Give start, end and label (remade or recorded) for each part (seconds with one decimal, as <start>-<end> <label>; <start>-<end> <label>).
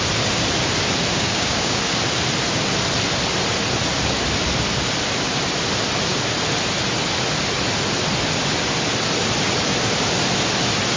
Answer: 0.0-1.1 recorded; 1.1-1.8 remade; 1.8-11.0 recorded